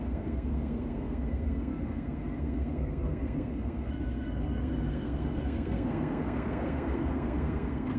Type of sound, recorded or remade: remade